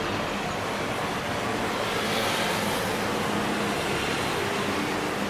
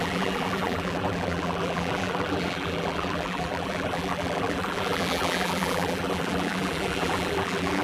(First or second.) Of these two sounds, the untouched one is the first